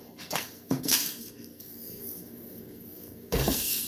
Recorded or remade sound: remade